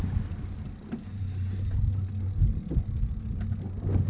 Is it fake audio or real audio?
real